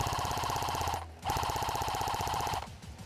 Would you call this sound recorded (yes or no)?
yes